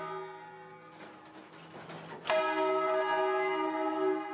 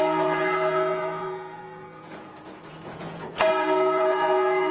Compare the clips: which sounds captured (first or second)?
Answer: first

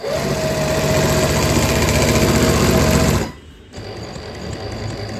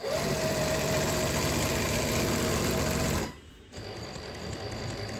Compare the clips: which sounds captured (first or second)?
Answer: first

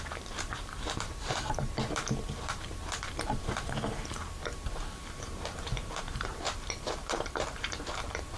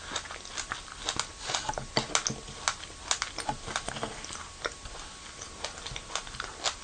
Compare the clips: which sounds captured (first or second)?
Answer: second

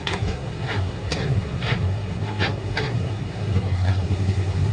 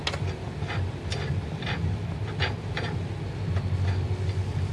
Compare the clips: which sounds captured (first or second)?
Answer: second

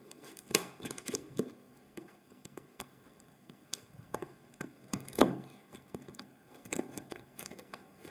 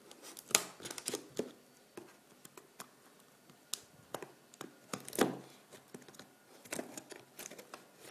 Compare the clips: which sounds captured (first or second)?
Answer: second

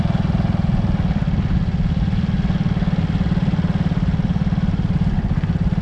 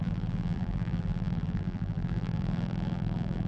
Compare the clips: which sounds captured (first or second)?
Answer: first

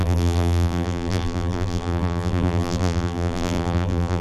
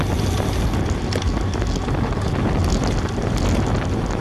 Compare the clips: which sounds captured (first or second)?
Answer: second